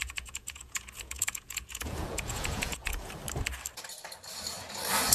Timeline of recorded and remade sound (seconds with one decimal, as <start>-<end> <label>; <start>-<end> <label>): 0.0-3.1 remade; 3.1-5.1 recorded